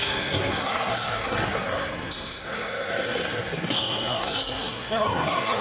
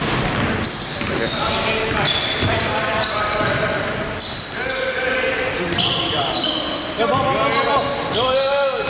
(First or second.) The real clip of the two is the second